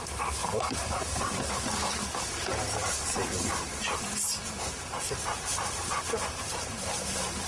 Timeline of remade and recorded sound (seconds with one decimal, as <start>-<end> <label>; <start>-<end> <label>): 0.0-0.4 recorded; 0.4-1.5 remade; 1.5-2.5 recorded; 2.5-7.0 remade; 7.0-7.5 recorded